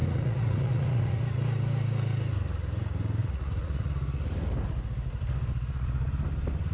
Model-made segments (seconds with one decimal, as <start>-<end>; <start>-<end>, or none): 0.0-1.2; 3.2-3.9